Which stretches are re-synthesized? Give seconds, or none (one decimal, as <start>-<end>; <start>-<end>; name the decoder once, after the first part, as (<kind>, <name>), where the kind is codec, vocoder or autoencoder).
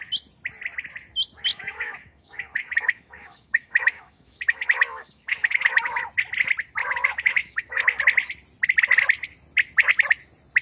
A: 1.5-6.0 (autoencoder, DAC-VAE); 6.8-8.0